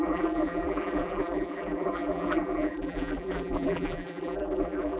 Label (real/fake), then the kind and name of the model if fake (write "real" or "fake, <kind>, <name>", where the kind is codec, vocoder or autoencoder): fake, vocoder, BigVGAN v2